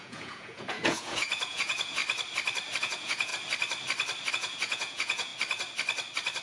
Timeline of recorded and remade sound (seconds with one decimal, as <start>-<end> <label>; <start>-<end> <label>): 0.0-2.0 remade; 2.0-2.8 recorded; 2.8-3.3 remade; 3.3-4.3 recorded; 4.3-5.3 remade; 5.3-6.4 recorded